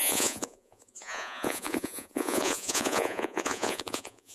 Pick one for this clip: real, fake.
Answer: fake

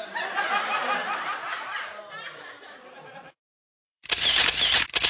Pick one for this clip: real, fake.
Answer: fake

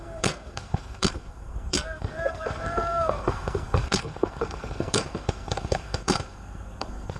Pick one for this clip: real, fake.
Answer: fake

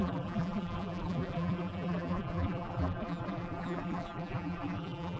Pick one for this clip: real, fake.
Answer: fake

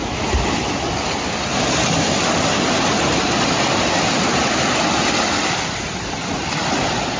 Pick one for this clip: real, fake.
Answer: fake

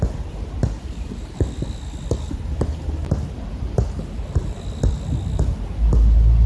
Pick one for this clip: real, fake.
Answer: real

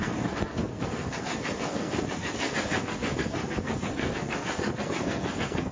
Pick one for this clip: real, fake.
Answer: fake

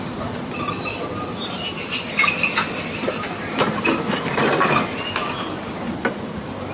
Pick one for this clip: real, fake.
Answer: real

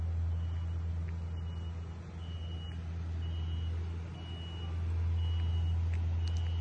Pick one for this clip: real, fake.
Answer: real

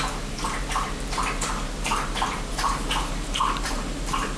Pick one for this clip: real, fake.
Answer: fake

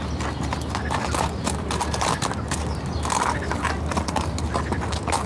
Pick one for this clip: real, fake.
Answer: real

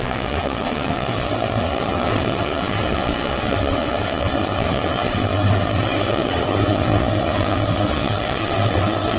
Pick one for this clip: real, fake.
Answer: fake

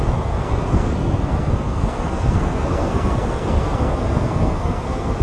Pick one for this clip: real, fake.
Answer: fake